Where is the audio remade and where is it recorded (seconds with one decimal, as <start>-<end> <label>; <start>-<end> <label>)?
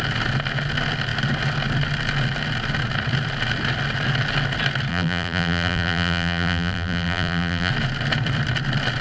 0.0-4.9 recorded; 4.9-7.7 remade; 7.7-9.0 recorded